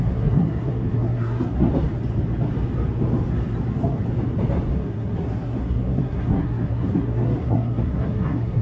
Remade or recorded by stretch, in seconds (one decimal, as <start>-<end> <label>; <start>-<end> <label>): 0.0-1.7 remade; 1.7-4.7 recorded; 4.7-8.6 remade